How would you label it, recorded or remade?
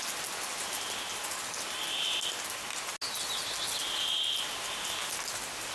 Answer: recorded